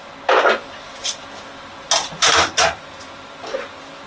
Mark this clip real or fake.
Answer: real